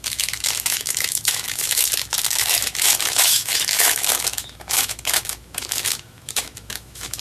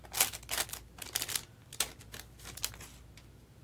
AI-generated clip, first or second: first